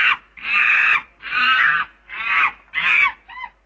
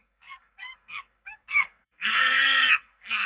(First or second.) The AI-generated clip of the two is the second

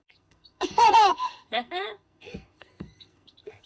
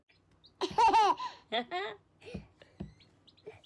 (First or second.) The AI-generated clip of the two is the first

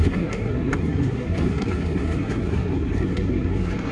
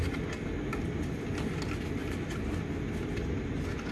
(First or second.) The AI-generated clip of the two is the first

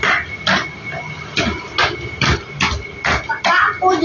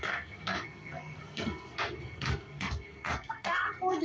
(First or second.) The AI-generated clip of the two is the second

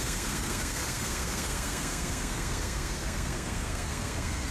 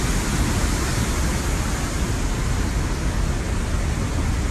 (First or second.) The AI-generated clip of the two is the first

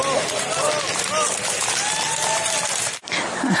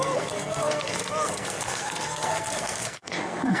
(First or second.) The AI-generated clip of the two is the second